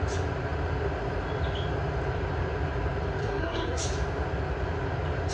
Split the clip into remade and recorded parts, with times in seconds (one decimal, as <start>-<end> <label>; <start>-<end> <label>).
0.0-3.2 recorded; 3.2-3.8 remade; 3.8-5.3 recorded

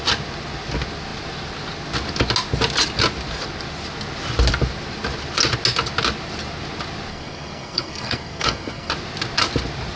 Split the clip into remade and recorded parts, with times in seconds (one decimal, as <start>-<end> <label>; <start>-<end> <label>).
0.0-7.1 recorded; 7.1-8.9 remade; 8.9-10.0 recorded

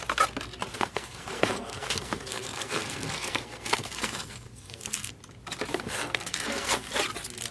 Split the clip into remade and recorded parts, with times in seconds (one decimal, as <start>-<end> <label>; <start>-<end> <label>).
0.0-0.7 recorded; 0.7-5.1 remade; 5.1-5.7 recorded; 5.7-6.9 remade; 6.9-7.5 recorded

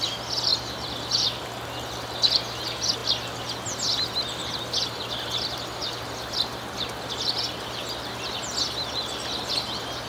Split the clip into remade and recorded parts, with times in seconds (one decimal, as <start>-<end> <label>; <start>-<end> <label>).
0.0-10.1 recorded

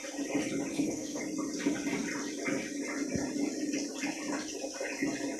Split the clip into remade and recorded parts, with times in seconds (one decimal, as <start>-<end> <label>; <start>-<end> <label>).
0.0-0.7 recorded; 0.7-1.2 remade; 1.2-5.4 recorded

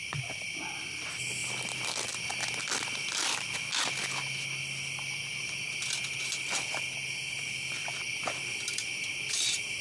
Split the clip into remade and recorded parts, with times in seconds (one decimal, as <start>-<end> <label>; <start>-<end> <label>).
0.0-9.8 recorded

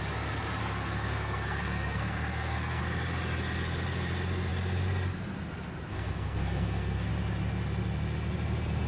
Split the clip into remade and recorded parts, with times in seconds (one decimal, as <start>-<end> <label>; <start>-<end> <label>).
0.0-0.6 recorded; 0.6-2.8 remade; 2.8-5.9 recorded; 5.9-7.1 remade; 7.1-8.9 recorded

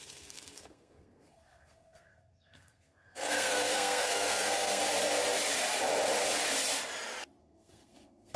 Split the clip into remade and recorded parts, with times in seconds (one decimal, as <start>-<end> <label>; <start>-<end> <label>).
0.0-4.8 remade; 4.8-7.4 recorded; 7.4-8.4 remade